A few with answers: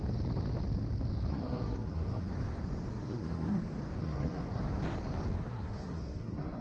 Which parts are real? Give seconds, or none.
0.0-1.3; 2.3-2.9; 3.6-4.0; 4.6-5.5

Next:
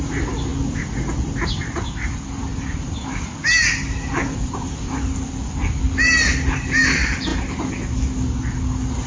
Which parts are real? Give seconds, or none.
0.0-2.5; 3.3-4.2; 5.0-9.1

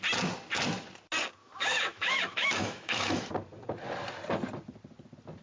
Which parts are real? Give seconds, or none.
0.0-1.4; 3.3-5.4

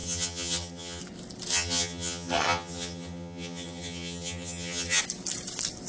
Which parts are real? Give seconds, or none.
1.0-1.5; 5.0-5.9